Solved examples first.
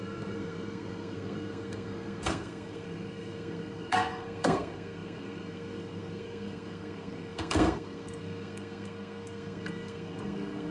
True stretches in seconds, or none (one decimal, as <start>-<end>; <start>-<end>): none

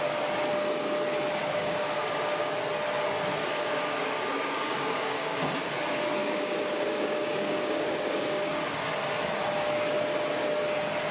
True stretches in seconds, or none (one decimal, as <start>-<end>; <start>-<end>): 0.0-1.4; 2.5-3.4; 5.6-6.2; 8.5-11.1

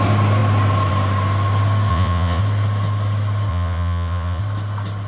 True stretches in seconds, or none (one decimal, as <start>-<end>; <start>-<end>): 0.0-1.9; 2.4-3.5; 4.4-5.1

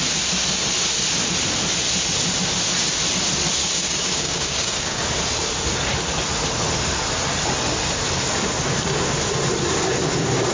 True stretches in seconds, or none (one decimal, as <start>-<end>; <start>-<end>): 0.0-3.6; 5.0-10.5

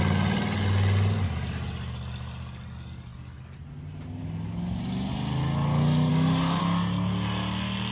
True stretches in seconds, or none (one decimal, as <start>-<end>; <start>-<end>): 0.0-6.1; 6.6-7.9

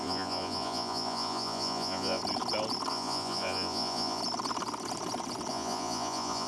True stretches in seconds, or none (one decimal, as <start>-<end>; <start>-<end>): 2.2-2.9; 4.2-5.5